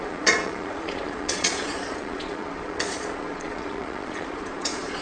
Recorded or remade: remade